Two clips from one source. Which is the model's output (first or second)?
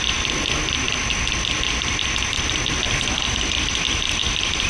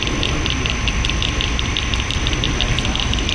first